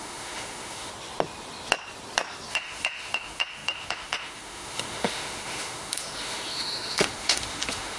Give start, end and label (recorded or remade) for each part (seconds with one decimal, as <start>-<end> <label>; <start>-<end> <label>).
0.0-0.9 remade; 0.9-2.5 recorded; 2.5-8.0 remade